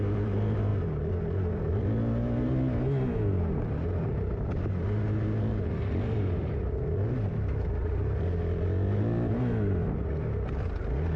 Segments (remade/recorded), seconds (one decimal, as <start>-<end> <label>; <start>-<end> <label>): 0.0-11.2 recorded